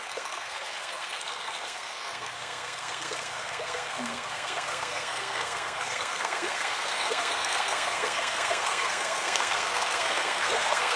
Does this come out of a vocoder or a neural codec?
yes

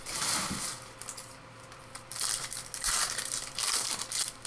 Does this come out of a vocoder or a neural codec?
no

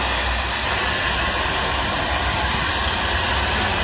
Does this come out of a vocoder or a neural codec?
no